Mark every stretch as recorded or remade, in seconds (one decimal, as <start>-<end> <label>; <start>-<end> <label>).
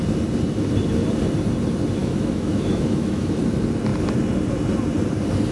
0.0-2.0 recorded; 2.0-3.4 remade; 3.4-5.5 recorded